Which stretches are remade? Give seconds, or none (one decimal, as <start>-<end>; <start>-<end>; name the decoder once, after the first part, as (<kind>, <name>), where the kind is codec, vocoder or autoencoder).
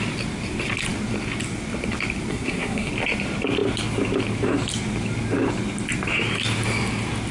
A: 2.3-2.9 (codec, SNAC)